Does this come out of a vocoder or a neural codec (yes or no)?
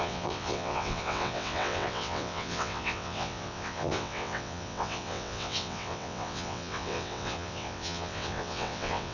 yes